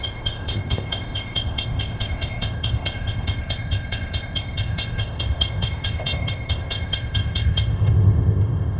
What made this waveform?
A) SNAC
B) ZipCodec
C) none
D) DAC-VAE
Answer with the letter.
B